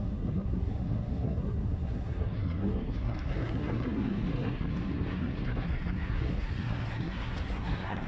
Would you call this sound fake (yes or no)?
yes